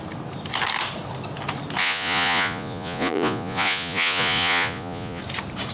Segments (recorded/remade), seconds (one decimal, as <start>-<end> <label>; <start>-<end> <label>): 0.0-1.8 recorded; 1.8-5.2 remade; 5.2-5.7 recorded